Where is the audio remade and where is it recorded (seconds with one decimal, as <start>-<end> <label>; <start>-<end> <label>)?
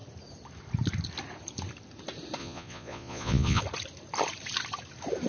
0.0-2.4 recorded; 2.4-3.6 remade; 3.6-5.3 recorded